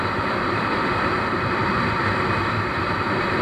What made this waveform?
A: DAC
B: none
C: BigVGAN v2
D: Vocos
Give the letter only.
C